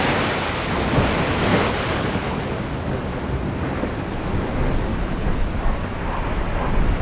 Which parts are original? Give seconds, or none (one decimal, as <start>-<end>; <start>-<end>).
0.0-1.5; 2.4-4.9; 5.5-7.0